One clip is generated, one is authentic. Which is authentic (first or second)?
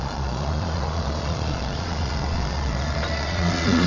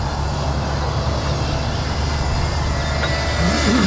second